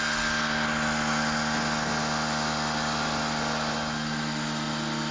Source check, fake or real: real